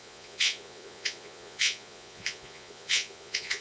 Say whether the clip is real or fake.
fake